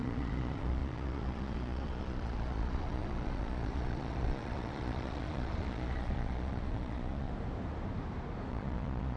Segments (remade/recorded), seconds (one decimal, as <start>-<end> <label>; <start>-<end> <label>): 0.0-7.3 remade; 7.3-8.5 recorded; 8.5-9.2 remade